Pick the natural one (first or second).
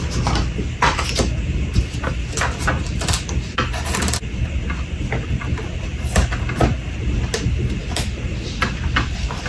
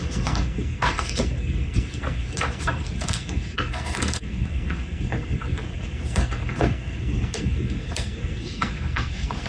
first